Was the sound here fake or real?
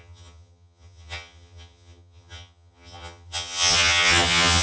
fake